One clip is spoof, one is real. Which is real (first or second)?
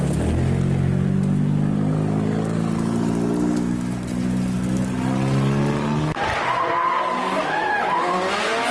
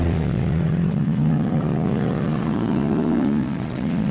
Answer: first